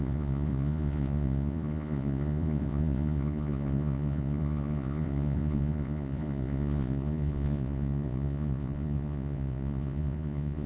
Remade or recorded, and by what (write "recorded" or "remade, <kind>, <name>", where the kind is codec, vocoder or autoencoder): remade, vocoder, Vocos